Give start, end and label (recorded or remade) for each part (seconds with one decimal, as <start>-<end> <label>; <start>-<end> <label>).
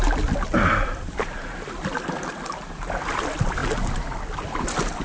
0.0-5.0 recorded